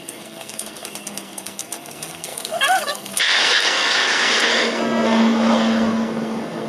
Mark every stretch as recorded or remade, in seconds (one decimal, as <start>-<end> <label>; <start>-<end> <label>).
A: 0.0-6.7 remade